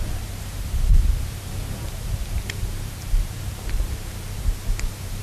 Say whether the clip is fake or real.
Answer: fake